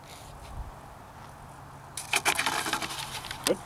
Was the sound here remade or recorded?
recorded